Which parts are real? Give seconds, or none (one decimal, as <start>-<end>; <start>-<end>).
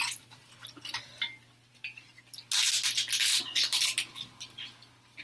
0.0-5.2